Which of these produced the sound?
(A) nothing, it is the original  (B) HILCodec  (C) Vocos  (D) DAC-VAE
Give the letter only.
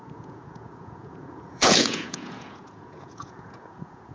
C